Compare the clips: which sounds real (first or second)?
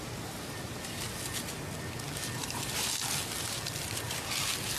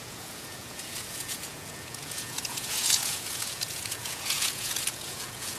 first